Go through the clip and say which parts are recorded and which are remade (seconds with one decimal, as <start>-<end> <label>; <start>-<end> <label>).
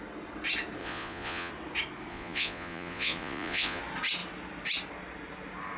0.0-0.8 recorded; 0.8-1.5 remade; 1.5-2.1 recorded; 2.1-3.8 remade; 3.8-5.8 recorded